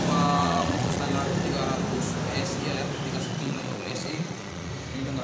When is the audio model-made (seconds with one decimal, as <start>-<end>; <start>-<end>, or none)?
0.4-1.0; 3.3-4.7